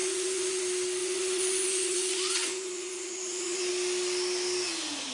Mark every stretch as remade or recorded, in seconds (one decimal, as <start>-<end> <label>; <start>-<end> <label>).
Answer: 0.0-0.6 remade; 0.6-1.0 recorded; 1.0-3.7 remade; 3.7-5.1 recorded